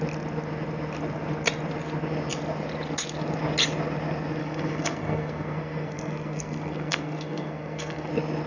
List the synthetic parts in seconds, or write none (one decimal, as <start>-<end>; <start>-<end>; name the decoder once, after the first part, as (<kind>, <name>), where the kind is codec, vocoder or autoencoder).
4.4-8.1 (codec, SNAC)